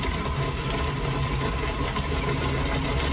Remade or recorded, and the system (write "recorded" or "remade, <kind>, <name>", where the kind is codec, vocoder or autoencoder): recorded